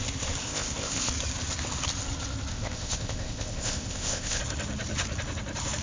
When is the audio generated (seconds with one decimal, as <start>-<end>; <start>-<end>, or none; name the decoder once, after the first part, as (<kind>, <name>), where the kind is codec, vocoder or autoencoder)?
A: 0.4-1.1 (codec, ZipCodec); 2.5-4.4